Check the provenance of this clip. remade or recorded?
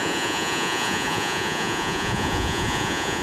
remade